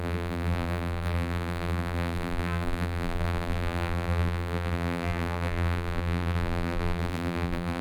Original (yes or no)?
no